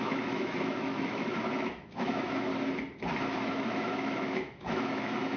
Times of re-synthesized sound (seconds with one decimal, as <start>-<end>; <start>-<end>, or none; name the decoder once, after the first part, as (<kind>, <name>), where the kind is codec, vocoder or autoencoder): 0.0-2.5 (autoencoder, DAC-VAE); 3.5-5.4